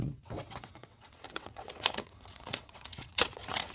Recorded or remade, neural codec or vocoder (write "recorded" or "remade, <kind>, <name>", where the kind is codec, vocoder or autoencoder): remade, vocoder, WaveNeXt